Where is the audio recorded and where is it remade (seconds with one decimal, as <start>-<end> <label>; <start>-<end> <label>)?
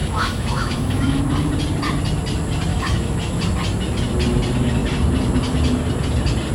0.0-1.2 remade; 1.2-2.7 recorded; 2.7-3.4 remade; 3.4-6.5 recorded